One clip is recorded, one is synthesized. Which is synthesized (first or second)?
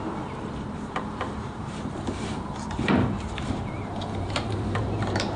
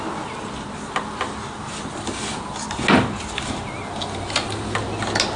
first